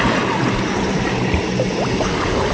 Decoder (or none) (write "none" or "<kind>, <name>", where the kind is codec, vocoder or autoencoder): none